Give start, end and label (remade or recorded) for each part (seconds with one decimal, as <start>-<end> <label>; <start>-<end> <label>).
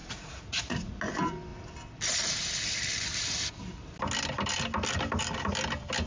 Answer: 0.0-0.9 remade; 0.9-6.1 recorded